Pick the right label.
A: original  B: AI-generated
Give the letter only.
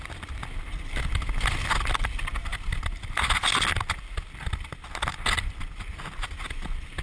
A